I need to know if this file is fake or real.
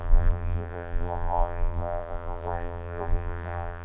fake